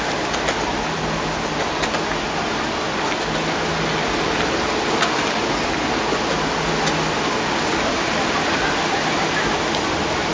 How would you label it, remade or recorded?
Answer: recorded